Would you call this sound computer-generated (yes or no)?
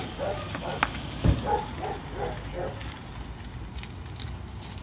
no